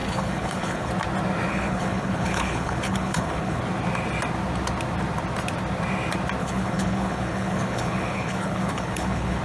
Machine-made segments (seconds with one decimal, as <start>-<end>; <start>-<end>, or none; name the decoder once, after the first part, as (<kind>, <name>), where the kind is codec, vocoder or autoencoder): 0.0-0.9 (codec, HILCodec); 1.5-3.6; 6.4-9.4